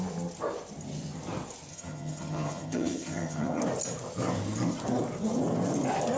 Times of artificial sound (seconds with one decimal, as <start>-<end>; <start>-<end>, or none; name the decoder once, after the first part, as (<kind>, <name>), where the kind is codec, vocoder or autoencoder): 1.7-3.6 (vocoder, HiFi-GAN)